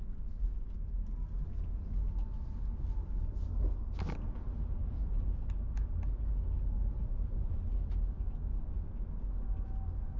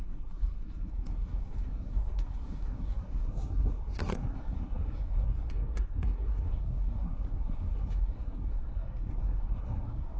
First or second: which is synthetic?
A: second